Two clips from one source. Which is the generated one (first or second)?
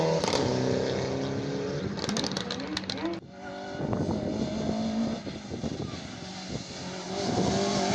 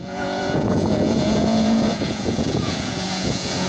second